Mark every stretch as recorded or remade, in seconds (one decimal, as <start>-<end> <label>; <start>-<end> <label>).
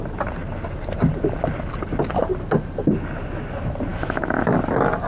0.0-3.9 recorded; 3.9-4.5 remade; 4.5-5.1 recorded